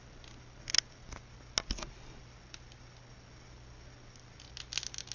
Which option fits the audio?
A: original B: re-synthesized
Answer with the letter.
A